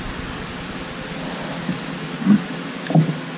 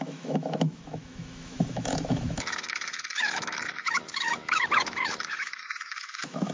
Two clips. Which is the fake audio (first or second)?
second